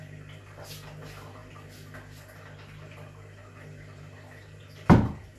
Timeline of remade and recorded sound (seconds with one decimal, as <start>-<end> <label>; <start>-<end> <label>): 0.0-5.4 recorded